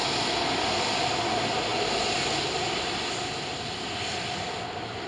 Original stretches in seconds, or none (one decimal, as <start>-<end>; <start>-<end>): 0.0-5.1